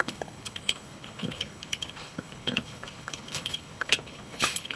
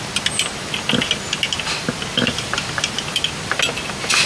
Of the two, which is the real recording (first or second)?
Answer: second